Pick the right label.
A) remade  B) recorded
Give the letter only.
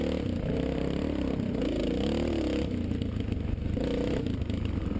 B